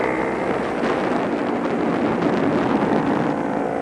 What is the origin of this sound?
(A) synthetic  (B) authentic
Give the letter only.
B